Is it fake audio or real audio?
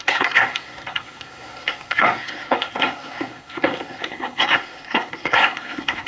fake